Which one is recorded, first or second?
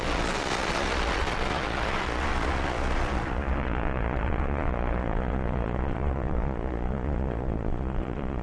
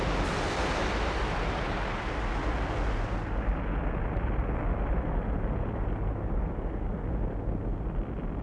second